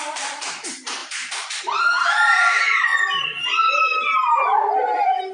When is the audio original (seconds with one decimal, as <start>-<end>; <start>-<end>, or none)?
2.9-3.8